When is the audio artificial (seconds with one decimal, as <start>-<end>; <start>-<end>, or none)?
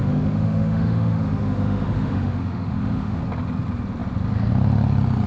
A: 0.0-3.2